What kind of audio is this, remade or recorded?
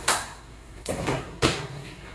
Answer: remade